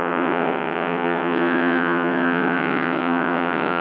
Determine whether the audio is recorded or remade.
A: remade